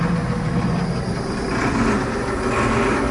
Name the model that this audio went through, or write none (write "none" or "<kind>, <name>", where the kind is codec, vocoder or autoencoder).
none